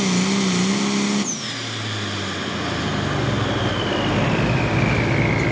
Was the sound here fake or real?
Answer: real